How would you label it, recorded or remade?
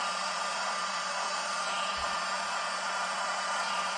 remade